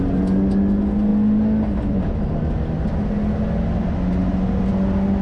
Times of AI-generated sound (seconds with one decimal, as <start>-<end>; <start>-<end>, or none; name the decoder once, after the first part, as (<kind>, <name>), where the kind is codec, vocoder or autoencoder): none